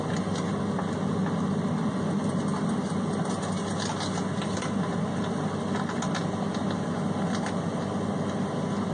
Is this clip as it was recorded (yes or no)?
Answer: yes